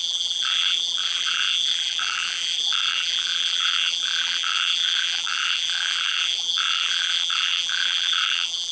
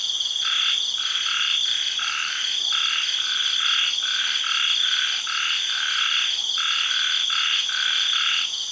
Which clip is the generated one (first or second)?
first